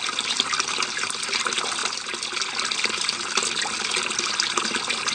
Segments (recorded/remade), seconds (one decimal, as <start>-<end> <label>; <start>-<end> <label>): 0.0-5.1 recorded